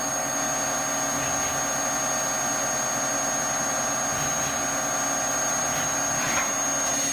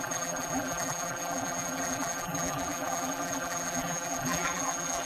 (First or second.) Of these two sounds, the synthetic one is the second